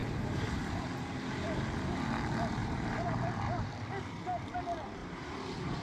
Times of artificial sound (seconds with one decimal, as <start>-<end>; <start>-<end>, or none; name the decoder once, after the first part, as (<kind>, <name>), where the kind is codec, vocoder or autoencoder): 0.0-0.7 (vocoder, BigVGAN v2); 2.6-3.7; 5.0-5.8